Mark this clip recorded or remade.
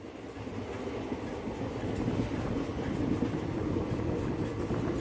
recorded